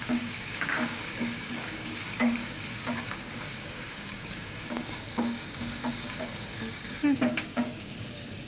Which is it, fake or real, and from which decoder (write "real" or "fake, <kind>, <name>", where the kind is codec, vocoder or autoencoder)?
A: fake, codec, DAC